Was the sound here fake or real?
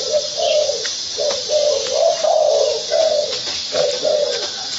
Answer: real